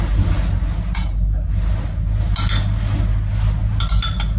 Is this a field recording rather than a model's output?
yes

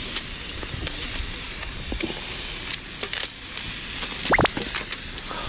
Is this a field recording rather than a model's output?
yes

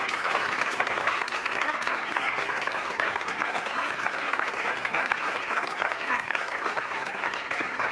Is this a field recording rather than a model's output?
no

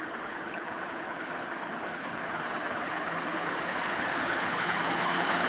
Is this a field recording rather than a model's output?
no